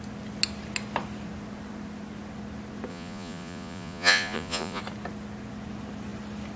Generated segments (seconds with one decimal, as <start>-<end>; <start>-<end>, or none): 2.9-4.8